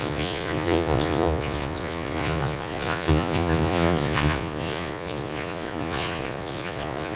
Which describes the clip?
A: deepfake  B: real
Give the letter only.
A